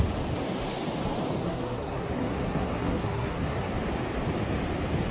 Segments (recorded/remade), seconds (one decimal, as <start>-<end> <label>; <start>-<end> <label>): 0.0-1.4 recorded; 1.4-3.7 remade; 3.7-5.1 recorded